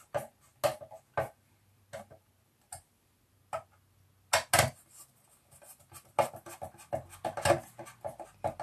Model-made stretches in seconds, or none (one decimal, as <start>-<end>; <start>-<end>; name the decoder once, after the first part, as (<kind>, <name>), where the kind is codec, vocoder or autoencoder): none